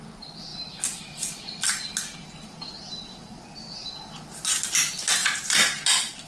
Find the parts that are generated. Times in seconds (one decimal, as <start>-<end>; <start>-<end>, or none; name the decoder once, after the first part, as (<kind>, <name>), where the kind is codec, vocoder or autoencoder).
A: none